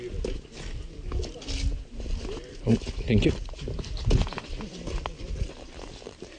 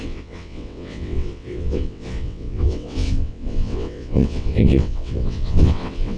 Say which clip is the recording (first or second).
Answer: first